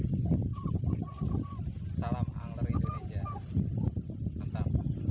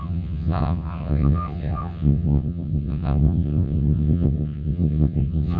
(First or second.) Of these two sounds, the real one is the first